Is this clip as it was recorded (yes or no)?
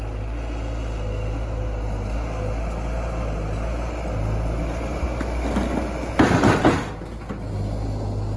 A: yes